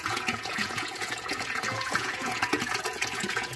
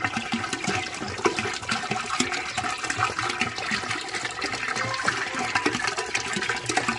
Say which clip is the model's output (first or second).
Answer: first